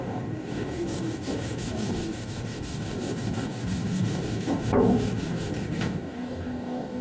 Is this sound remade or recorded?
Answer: remade